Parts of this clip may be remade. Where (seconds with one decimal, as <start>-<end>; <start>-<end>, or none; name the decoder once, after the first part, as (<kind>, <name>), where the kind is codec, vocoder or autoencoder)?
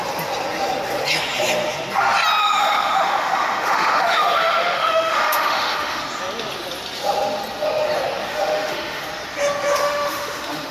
2.4-6.0 (autoencoder, DAC-VAE); 8.3-9.0; 9.8-10.7